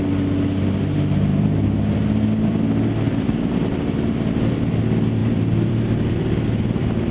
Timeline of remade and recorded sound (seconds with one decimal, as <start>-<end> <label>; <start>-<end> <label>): 0.0-1.3 recorded; 1.3-4.8 remade; 4.8-5.2 recorded; 5.2-7.1 remade